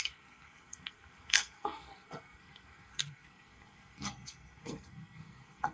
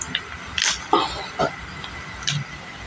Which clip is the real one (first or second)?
second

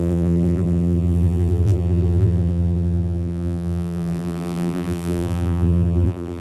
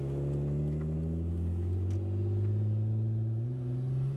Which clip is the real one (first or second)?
second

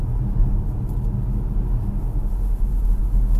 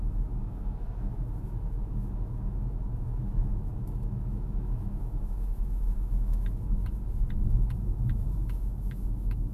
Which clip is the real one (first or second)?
first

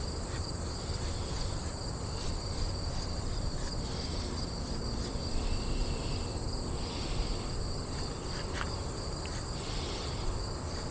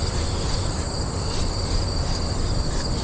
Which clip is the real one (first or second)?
second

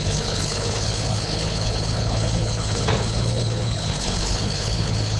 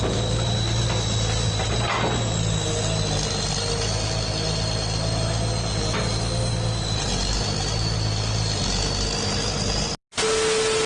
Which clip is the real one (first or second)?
second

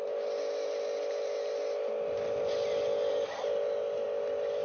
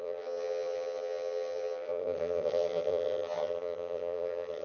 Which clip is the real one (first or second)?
first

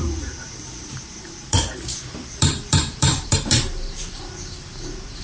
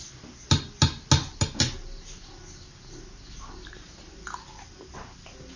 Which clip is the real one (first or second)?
second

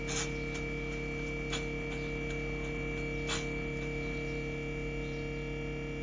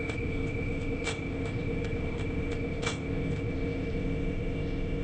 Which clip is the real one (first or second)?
first